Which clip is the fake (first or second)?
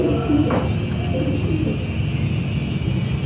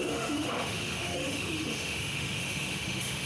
second